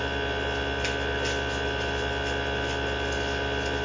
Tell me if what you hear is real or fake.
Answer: real